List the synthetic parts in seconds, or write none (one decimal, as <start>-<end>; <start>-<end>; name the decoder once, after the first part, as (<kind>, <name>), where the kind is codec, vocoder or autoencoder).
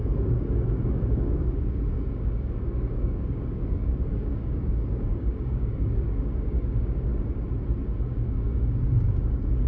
0.0-7.1 (codec, DAC); 8.0-9.7